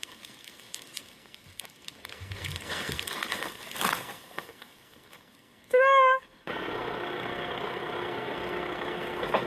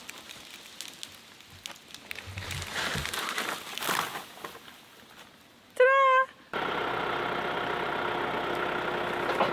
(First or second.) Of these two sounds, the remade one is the first